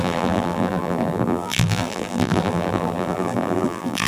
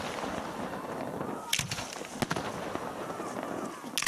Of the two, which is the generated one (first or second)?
first